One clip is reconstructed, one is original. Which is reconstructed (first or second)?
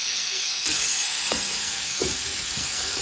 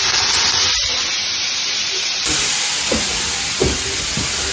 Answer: first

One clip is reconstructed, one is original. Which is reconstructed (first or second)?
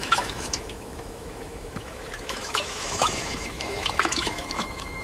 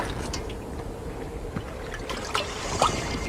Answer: first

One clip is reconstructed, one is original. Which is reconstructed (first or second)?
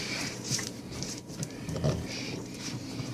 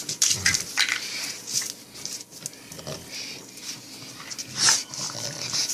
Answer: first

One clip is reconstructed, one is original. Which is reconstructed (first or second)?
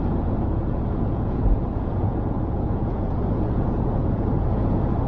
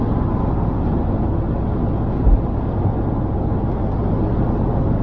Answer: first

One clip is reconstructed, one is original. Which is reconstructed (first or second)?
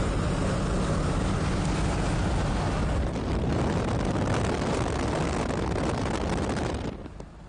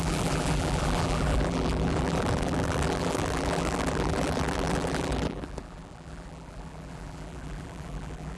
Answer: second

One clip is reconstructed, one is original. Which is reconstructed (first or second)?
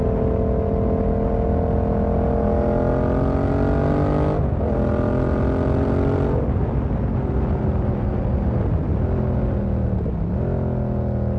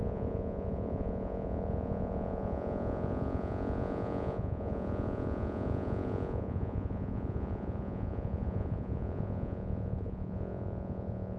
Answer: second